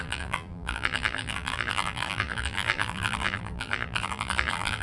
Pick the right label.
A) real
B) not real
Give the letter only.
B